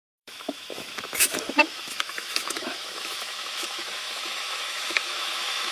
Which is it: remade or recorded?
remade